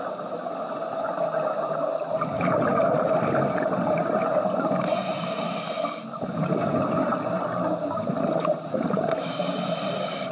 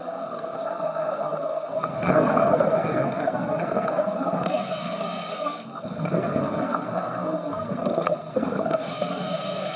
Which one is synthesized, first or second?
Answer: second